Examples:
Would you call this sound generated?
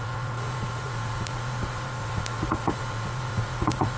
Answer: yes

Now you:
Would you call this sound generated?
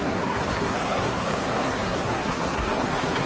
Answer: yes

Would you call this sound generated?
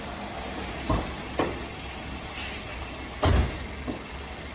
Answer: no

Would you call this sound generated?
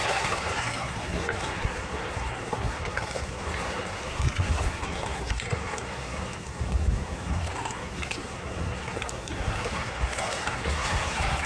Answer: yes